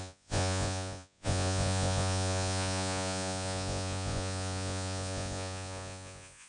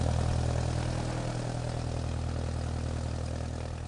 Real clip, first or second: second